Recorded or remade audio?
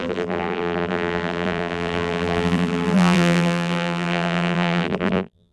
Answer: remade